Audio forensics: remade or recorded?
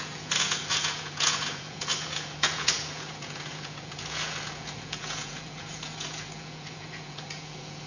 remade